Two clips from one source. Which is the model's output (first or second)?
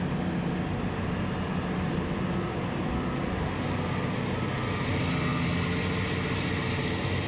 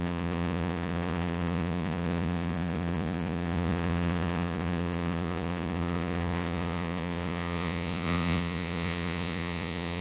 second